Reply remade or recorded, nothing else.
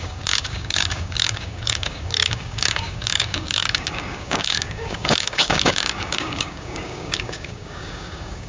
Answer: remade